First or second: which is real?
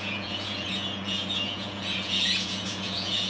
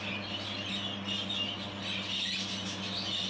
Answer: second